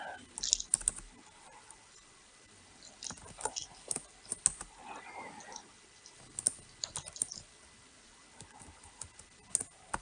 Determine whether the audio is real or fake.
real